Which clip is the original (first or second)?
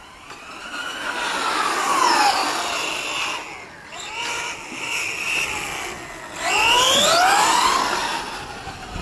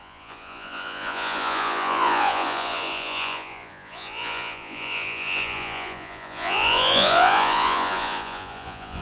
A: first